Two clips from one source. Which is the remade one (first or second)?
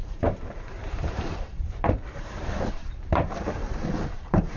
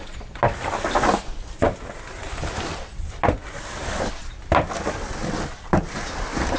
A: first